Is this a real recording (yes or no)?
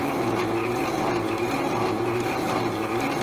yes